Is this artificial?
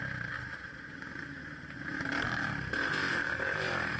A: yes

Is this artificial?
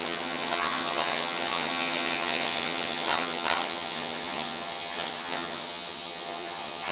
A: yes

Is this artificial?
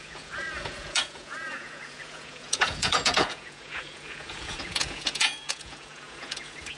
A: yes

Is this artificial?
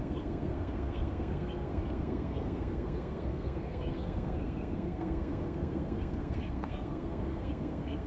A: yes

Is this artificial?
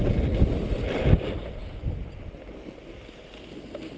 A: no